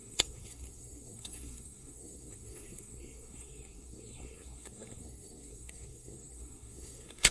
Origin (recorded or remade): remade